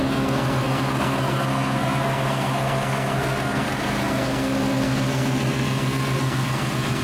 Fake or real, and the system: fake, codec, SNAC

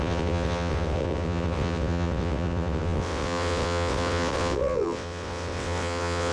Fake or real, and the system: fake, vocoder, WaveNeXt